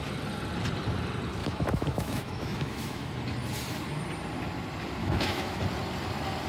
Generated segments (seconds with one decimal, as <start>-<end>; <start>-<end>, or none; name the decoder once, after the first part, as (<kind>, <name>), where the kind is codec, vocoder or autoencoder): 1.4-3.1 (autoencoder, DAC-VAE); 5.0-5.6